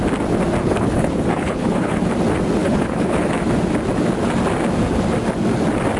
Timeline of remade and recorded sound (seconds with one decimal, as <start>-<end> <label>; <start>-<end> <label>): 0.0-0.6 recorded; 0.6-2.0 remade; 2.0-2.6 recorded; 2.6-3.2 remade; 3.2-6.0 recorded